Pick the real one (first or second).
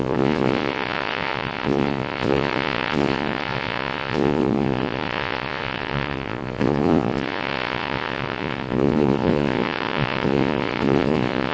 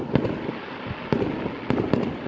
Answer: second